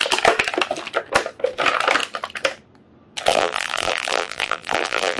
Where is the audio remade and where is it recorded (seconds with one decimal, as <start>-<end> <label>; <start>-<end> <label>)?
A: 0.0-3.3 recorded; 3.3-5.2 remade